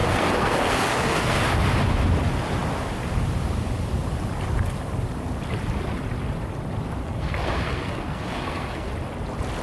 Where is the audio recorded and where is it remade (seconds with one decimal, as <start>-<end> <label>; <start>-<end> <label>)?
0.0-1.4 remade; 1.4-7.0 recorded; 7.0-8.9 remade; 8.9-9.6 recorded